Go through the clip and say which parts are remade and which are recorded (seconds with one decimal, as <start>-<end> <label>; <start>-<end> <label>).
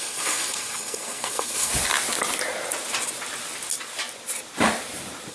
0.0-1.7 remade; 1.7-5.3 recorded